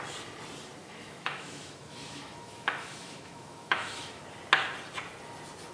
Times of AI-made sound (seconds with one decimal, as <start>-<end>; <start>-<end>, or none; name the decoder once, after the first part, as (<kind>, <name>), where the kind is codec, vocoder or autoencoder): 0.8-4.2 (autoencoder, DAC-VAE)

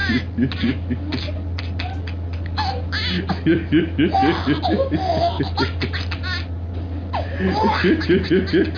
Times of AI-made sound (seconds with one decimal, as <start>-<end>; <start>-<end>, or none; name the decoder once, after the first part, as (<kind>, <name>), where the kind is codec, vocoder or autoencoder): none

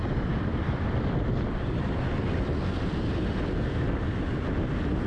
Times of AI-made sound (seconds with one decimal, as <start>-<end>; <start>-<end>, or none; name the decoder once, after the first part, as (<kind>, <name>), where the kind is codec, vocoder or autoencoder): none